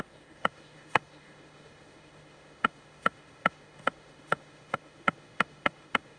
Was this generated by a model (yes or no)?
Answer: yes